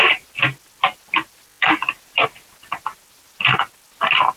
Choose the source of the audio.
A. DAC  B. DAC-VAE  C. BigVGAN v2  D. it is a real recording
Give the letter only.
D